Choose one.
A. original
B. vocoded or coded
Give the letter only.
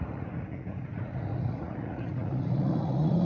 B